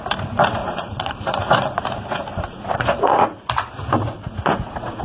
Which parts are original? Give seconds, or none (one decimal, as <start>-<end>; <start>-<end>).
0.0-0.6; 1.8-2.3; 3.4-4.0